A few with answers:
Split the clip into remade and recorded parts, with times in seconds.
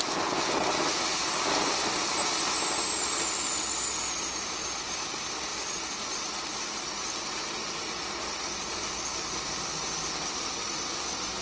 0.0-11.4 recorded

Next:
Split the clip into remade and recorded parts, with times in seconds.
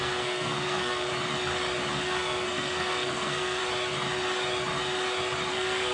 0.0-1.1 remade; 1.1-1.9 recorded; 1.9-3.6 remade; 3.6-5.5 recorded; 5.5-5.9 remade